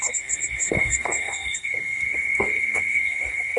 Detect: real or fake fake